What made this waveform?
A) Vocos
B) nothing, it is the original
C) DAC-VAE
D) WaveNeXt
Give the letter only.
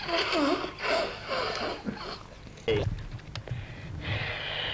B